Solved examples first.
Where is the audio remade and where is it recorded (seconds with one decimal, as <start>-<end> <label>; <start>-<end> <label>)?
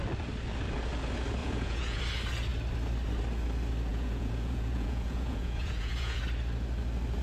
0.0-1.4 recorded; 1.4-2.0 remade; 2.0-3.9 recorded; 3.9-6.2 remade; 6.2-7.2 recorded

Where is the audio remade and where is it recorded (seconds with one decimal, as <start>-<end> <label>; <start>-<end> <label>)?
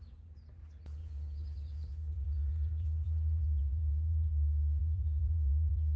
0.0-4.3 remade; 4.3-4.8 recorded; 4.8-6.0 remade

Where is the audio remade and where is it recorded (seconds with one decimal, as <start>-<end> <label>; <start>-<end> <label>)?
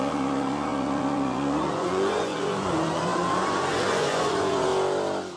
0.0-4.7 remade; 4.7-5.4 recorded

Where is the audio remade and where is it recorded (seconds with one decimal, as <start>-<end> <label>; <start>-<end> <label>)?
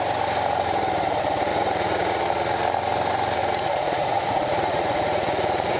0.0-1.5 recorded; 1.5-2.2 remade; 2.2-3.4 recorded; 3.4-5.8 remade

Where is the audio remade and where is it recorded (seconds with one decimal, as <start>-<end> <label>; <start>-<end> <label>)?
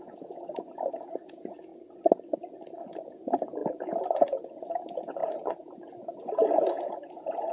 0.0-1.7 remade; 1.7-2.8 recorded; 2.8-7.5 remade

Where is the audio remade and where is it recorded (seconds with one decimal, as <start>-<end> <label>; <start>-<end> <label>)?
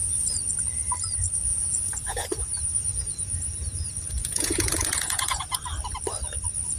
0.0-1.5 recorded; 1.5-5.6 remade; 5.6-6.8 recorded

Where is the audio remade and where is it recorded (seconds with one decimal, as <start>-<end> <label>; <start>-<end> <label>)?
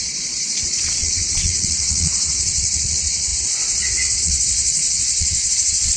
0.0-6.0 remade